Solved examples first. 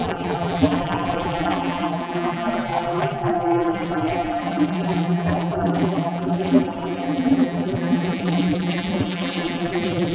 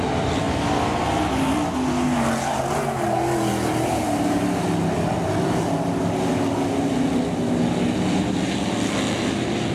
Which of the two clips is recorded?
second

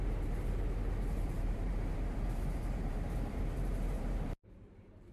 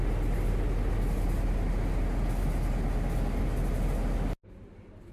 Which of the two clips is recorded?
second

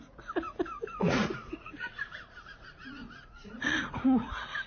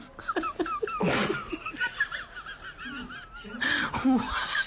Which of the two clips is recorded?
second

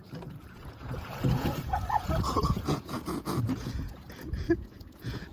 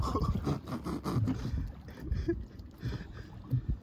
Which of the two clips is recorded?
second